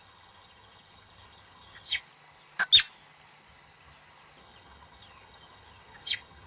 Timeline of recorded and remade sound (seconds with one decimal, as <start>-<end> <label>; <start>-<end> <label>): 0.0-2.0 remade; 2.0-4.4 recorded; 4.4-6.5 remade